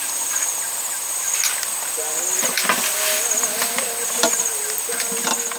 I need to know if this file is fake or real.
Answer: real